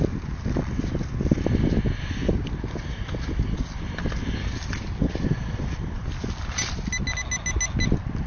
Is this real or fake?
real